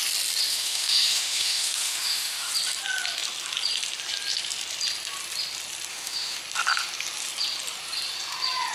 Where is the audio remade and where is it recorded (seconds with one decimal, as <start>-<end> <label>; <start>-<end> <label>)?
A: 0.0-0.5 recorded; 0.5-2.5 remade; 2.5-5.9 recorded; 5.9-6.4 remade; 6.4-8.7 recorded